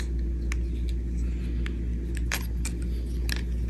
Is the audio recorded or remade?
recorded